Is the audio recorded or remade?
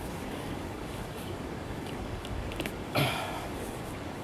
remade